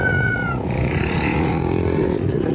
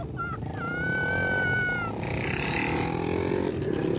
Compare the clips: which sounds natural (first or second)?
second